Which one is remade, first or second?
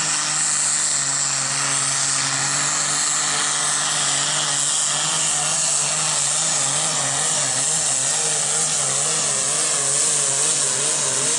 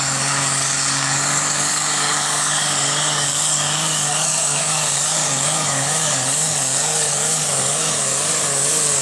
second